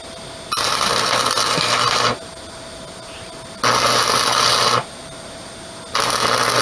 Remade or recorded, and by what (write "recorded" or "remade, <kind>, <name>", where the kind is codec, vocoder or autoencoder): recorded